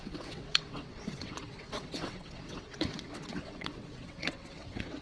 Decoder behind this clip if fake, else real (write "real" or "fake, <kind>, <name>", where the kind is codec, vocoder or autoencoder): fake, vocoder, WaveNeXt